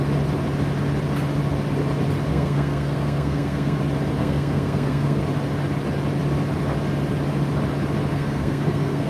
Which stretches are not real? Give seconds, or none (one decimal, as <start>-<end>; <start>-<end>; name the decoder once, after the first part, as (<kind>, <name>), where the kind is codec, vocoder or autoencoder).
2.3-3.8 (codec, SNAC); 4.2-5.2; 8.1-9.1